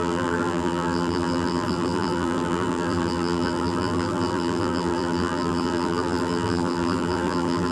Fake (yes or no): yes